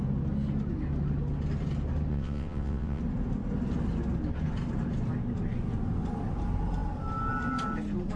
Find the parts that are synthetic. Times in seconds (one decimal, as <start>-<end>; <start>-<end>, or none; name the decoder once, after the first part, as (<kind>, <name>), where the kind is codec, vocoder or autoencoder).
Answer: 2.1-3.0 (vocoder, WaveNeXt)